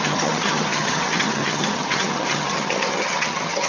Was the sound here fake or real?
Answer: fake